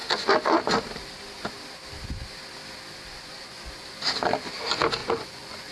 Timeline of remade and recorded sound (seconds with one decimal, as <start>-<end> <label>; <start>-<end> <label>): 0.0-3.1 recorded; 3.1-3.7 remade; 3.7-5.0 recorded; 5.0-5.7 remade